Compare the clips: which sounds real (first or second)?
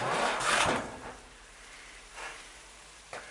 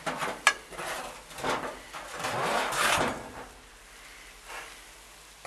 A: second